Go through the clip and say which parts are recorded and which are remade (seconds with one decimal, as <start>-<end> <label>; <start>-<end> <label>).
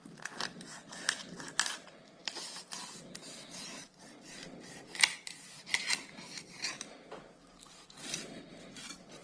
0.0-9.2 recorded